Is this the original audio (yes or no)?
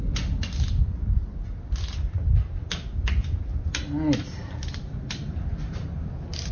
yes